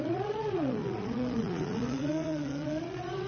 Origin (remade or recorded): remade